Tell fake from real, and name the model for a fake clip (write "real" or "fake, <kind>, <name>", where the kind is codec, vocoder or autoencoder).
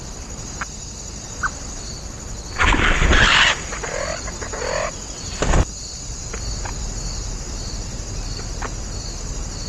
real